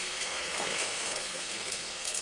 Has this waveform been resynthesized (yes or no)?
yes